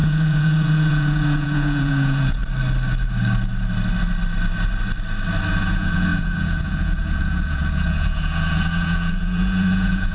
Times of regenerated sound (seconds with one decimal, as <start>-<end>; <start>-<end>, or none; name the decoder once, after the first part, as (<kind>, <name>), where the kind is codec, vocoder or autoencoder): 0.0-2.4 (vocoder, Vocos); 5.5-10.1